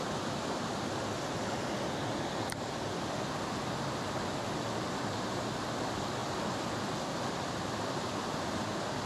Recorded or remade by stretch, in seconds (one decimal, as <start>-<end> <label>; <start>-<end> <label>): 0.0-9.1 recorded